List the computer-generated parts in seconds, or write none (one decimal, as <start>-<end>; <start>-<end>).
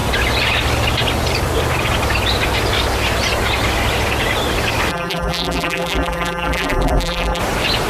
4.9-7.4